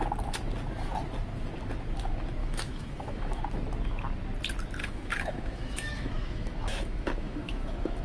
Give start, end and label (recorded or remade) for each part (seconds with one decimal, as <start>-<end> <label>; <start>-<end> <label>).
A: 0.0-2.4 recorded; 2.4-3.4 remade; 3.4-4.8 recorded; 4.8-8.0 remade